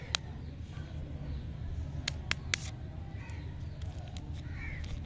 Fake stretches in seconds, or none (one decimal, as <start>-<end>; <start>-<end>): none